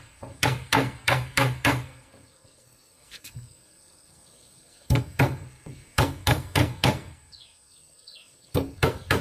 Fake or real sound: fake